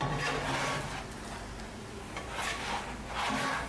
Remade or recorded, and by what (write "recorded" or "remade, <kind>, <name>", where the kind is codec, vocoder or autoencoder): recorded